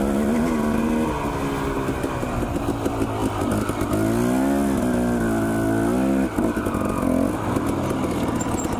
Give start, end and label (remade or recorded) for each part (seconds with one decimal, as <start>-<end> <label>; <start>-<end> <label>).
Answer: 0.0-8.8 recorded

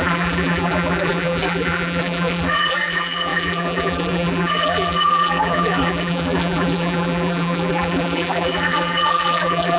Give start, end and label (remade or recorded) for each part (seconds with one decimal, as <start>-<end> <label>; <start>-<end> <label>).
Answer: 0.0-9.8 remade

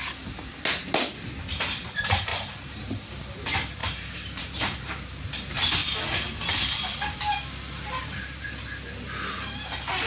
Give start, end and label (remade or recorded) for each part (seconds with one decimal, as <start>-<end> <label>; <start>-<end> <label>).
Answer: 0.0-2.3 recorded; 2.3-3.1 remade; 3.1-3.8 recorded; 3.8-5.2 remade; 5.2-8.0 recorded; 8.0-8.5 remade; 8.5-10.1 recorded

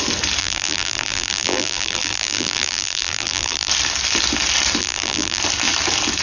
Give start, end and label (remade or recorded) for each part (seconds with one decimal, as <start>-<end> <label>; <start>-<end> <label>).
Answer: 0.0-0.4 recorded; 0.4-3.7 remade; 3.7-4.8 recorded; 4.8-5.4 remade; 5.4-6.2 recorded

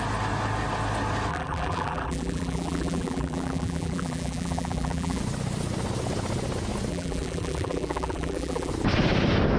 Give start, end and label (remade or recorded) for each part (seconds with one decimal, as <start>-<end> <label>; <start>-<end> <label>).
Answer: 0.0-1.3 recorded; 1.3-5.2 remade; 5.2-6.9 recorded; 6.9-8.7 remade; 8.7-9.6 recorded

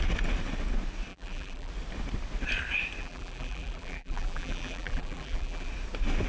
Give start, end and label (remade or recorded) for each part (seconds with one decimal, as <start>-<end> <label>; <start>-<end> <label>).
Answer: 0.0-1.1 recorded; 1.1-1.7 remade; 1.7-3.0 recorded; 3.0-5.7 remade; 5.7-6.3 recorded

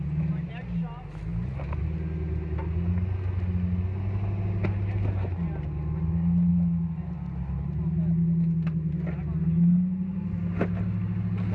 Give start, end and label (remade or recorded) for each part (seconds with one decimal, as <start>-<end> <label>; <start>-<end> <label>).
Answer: 0.0-1.3 recorded; 1.3-1.8 remade; 1.8-11.5 recorded

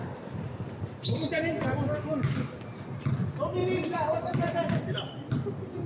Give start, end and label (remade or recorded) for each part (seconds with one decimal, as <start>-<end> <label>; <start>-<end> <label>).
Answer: 0.0-1.3 remade; 1.3-3.6 recorded; 3.6-5.4 remade; 5.4-5.9 recorded